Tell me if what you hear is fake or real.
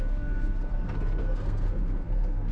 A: fake